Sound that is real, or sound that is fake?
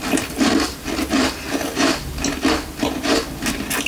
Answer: real